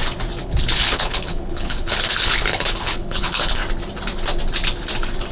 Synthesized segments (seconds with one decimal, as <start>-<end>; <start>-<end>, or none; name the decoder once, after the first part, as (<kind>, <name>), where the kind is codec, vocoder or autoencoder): 0.4-3.6 (codec, HILCodec)